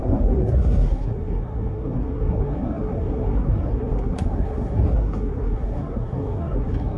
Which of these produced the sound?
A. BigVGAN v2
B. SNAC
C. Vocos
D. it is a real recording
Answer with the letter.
B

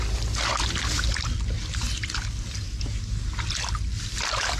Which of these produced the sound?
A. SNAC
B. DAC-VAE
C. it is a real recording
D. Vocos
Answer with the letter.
C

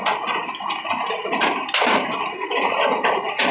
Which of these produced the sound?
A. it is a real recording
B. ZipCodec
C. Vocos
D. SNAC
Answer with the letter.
A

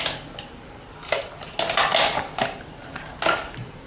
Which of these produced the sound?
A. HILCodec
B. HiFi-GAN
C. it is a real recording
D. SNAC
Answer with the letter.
C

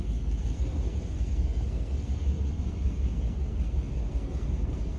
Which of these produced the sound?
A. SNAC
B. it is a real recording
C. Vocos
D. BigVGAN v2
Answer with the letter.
A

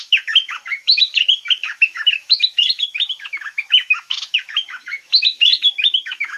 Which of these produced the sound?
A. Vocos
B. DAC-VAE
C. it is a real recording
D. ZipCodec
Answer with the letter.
B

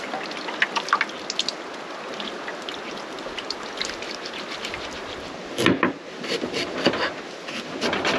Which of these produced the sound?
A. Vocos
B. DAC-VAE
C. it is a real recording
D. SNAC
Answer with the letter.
C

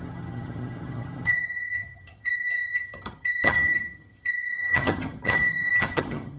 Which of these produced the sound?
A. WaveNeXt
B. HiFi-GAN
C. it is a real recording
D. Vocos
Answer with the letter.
B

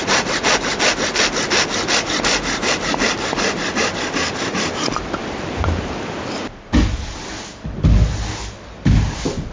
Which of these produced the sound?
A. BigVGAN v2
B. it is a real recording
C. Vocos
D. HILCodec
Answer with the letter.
B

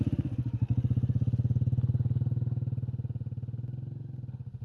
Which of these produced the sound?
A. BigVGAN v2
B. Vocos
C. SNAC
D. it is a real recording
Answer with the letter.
D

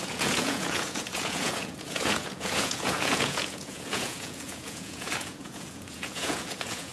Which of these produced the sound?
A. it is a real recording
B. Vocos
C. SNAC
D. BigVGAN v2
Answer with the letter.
B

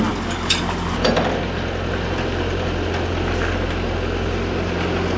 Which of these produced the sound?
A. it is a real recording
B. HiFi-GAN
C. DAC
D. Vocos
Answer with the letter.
A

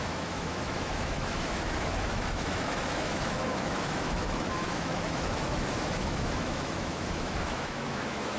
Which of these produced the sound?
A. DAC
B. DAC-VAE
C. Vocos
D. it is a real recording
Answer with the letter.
B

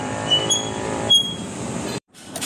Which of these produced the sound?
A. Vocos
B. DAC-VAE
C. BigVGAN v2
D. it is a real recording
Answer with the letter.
C